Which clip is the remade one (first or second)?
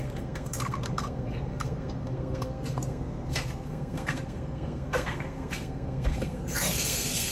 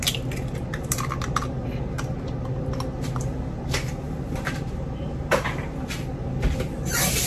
first